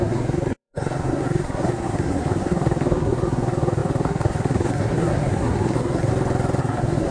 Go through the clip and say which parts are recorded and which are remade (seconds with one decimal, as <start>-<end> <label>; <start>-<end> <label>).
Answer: 0.0-6.1 remade; 6.1-6.6 recorded; 6.6-7.1 remade